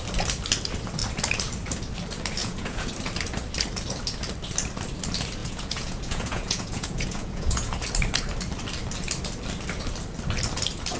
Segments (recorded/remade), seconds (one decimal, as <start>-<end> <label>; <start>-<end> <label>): 0.0-2.4 recorded; 2.4-2.9 remade; 2.9-5.4 recorded; 5.4-7.8 remade; 7.8-11.0 recorded